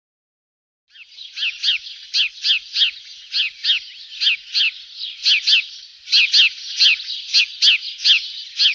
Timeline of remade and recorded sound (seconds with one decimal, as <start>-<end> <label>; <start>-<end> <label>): 0.0-8.7 recorded